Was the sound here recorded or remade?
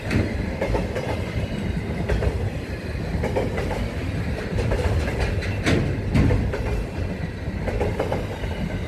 recorded